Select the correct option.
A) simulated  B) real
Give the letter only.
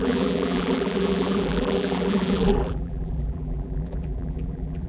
A